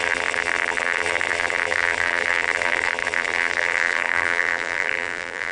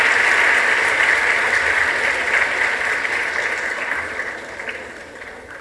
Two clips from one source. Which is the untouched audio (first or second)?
second